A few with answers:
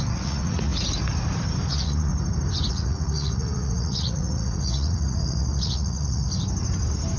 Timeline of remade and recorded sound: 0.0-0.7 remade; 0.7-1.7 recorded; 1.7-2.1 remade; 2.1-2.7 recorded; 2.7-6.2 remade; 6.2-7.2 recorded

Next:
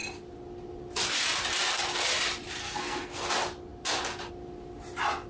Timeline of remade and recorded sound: 0.0-2.6 recorded; 2.6-3.2 remade; 3.2-5.3 recorded

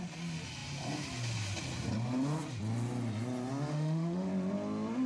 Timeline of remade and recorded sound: 0.0-3.7 recorded; 3.7-4.3 remade; 4.3-5.1 recorded

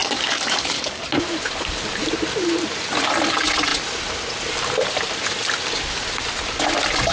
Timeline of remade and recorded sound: 0.0-1.0 remade; 1.0-7.1 recorded

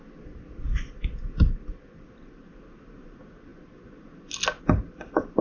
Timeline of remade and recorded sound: 0.0-5.4 recorded

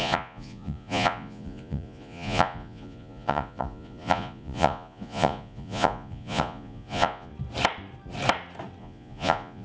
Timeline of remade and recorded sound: 0.0-7.3 remade; 7.3-8.8 recorded; 8.8-9.6 remade

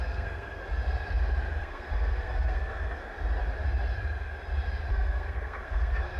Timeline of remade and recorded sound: 0.0-0.6 remade; 0.6-1.6 recorded; 1.6-3.0 remade; 3.0-4.9 recorded; 4.9-6.2 remade